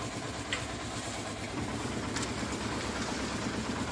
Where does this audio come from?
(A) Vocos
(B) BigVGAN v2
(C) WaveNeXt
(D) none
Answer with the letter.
D